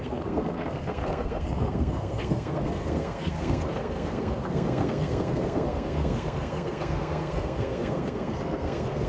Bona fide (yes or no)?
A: no